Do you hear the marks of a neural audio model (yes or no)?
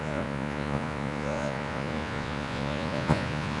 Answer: yes